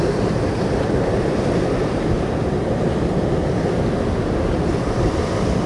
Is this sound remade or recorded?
recorded